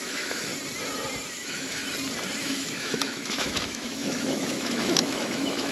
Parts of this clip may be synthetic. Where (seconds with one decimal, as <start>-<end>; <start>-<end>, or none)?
0.0-0.5; 1.3-1.8; 2.4-5.7